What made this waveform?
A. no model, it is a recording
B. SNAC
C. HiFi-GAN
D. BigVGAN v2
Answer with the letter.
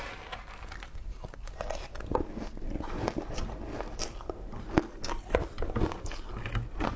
A